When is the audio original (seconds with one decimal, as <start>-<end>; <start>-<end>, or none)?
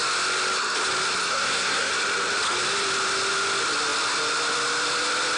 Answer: 0.0-1.3; 1.9-5.4